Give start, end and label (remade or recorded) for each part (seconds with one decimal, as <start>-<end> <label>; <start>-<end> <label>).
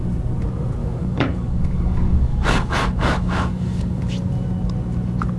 0.0-0.8 recorded; 0.8-4.0 remade; 4.0-5.4 recorded